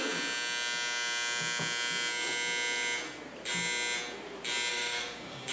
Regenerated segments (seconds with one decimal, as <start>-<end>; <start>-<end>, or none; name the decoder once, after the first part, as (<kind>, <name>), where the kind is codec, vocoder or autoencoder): 4.7-5.5 (codec, DAC)